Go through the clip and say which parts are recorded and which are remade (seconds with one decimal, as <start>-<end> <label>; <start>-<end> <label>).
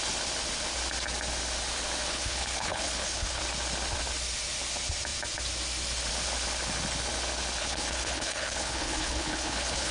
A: 0.0-2.1 recorded; 2.1-3.4 remade; 3.4-7.6 recorded; 7.6-9.9 remade